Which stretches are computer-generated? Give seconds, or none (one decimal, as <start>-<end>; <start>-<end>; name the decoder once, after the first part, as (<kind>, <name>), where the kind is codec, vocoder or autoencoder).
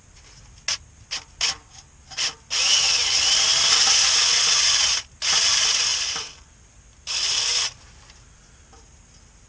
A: 5.9-7.8 (vocoder, BigVGAN v2)